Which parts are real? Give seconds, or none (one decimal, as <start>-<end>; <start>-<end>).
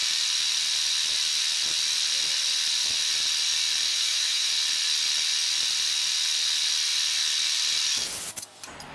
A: 0.0-3.9; 4.5-8.9